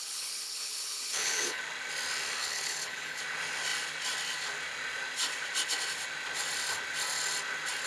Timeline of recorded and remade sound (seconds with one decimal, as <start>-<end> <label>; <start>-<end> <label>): 0.0-1.6 remade; 1.6-2.4 recorded; 2.4-3.2 remade; 3.2-7.9 recorded